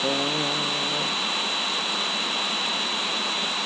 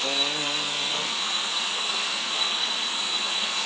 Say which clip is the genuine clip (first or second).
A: first